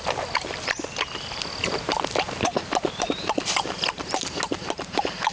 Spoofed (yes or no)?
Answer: no